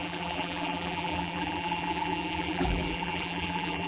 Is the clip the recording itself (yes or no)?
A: no